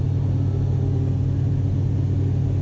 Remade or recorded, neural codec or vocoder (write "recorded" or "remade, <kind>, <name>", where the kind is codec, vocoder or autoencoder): recorded